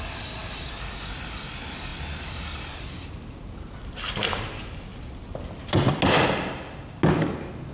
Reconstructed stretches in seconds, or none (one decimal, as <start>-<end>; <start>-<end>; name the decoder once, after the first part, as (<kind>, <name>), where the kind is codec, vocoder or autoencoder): none